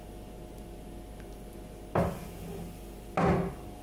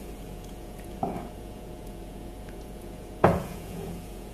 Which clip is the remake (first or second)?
second